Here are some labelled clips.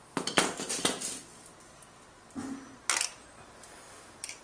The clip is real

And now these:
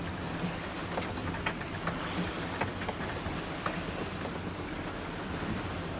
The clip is real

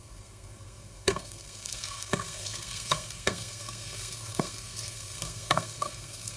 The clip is fake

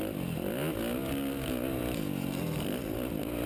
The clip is real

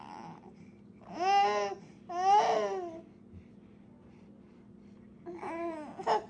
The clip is real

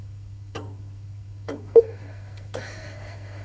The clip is fake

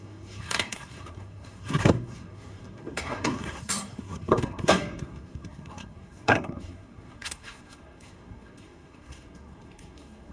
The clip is fake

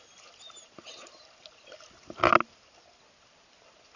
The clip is real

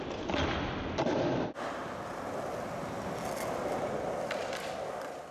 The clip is real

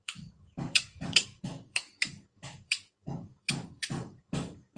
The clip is fake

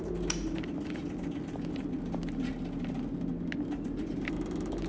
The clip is real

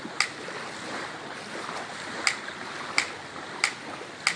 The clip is real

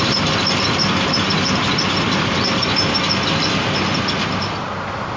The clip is real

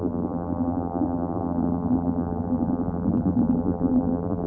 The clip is fake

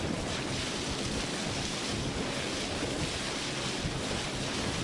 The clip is real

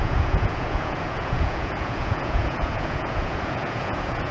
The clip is fake